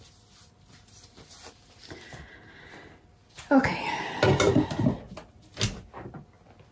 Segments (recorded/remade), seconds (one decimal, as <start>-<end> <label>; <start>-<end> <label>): 0.0-6.7 recorded